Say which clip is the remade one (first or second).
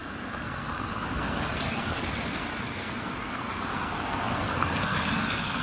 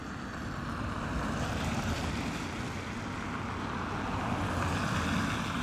first